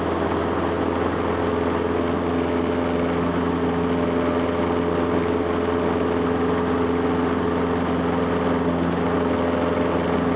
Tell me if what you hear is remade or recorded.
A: recorded